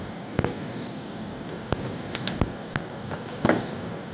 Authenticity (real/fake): fake